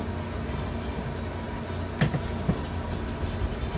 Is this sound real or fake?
real